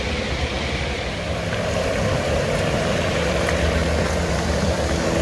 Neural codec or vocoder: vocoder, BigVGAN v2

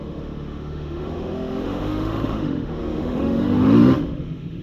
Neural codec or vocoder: autoencoder, DAC-VAE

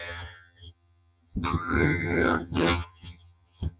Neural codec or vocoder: vocoder, HiFi-GAN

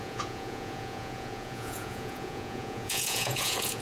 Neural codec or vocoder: vocoder, Vocos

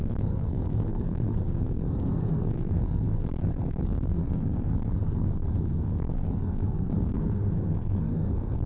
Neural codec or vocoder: codec, SNAC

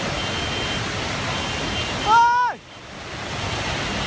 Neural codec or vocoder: none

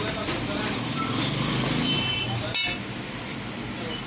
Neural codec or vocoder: none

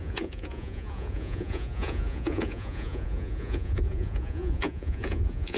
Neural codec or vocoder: vocoder, Vocos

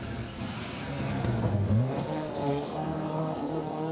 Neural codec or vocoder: codec, SNAC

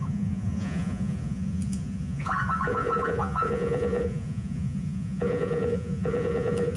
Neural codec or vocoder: vocoder, Vocos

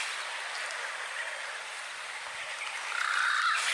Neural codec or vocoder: none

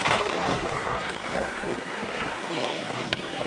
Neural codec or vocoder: codec, SNAC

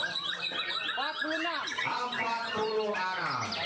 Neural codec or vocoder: none